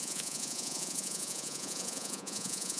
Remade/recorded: remade